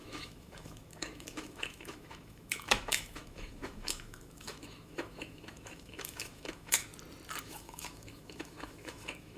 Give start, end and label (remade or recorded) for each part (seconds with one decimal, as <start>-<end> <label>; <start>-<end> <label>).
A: 0.0-6.9 remade; 6.9-7.4 recorded; 7.4-9.4 remade